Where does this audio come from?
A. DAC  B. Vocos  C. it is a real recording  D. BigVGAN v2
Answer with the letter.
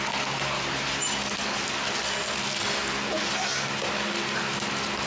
C